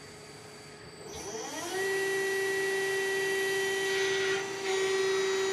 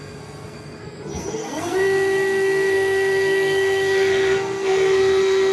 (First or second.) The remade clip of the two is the second